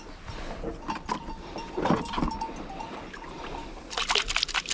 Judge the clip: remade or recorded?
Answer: recorded